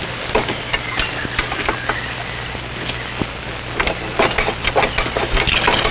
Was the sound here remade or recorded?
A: recorded